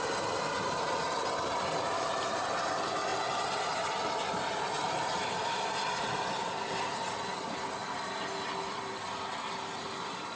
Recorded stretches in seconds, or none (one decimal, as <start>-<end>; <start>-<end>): 0.0-10.4